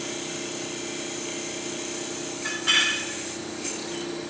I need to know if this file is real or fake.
real